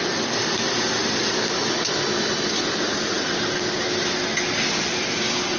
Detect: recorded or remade recorded